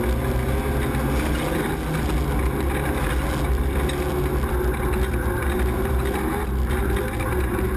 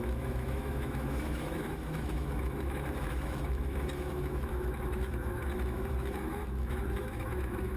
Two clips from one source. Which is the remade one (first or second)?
second